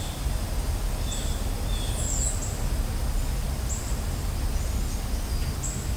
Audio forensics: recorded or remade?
recorded